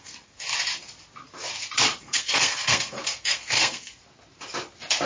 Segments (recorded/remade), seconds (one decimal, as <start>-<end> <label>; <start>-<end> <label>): 0.0-0.5 remade; 0.5-2.0 recorded; 2.0-4.0 remade; 4.0-5.1 recorded